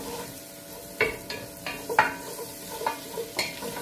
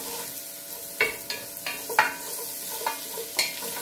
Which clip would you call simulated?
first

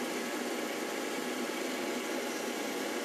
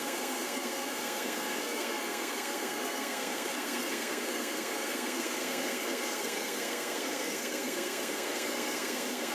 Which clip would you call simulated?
second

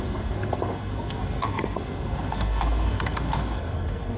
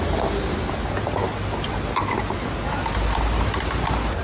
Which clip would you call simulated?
first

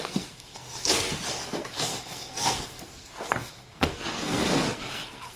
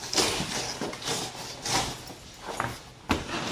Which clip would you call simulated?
first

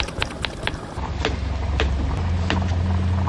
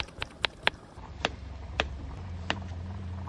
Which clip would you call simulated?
second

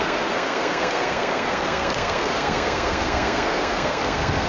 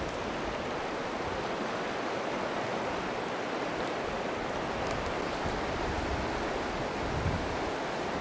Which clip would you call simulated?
first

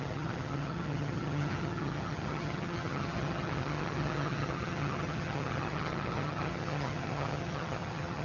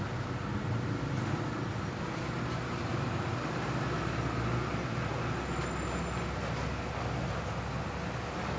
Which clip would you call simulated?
first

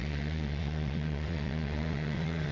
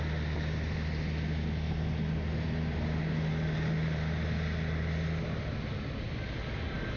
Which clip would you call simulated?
first